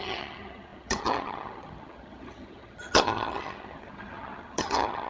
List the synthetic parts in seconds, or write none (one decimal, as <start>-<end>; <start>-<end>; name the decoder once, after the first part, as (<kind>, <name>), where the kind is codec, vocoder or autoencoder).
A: 0.0-5.1 (vocoder, HiFi-GAN)